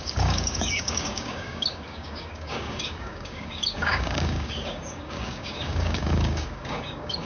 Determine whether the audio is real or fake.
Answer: fake